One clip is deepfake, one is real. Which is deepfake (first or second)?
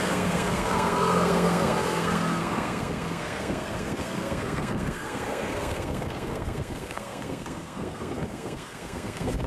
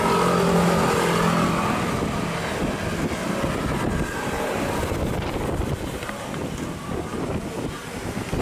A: first